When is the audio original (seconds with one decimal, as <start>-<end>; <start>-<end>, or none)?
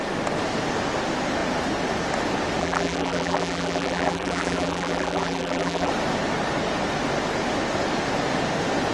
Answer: 0.0-2.6; 5.9-8.9